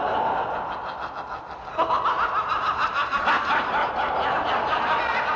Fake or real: real